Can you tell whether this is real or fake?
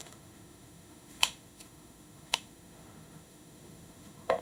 fake